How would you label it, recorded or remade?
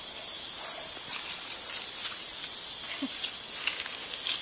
recorded